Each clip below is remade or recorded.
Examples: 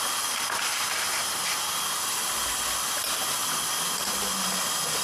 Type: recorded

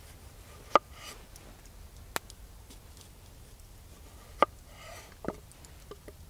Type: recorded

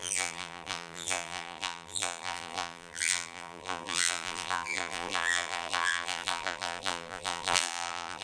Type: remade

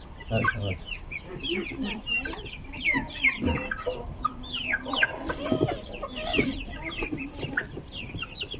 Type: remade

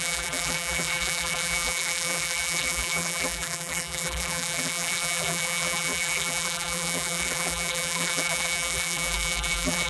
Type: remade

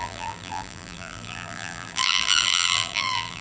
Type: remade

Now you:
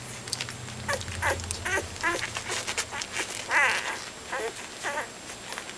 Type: recorded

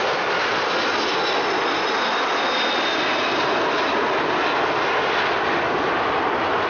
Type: recorded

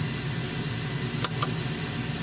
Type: recorded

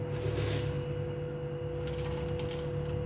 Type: recorded